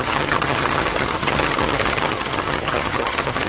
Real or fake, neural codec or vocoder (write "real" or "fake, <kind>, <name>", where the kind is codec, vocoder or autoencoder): fake, vocoder, HiFi-GAN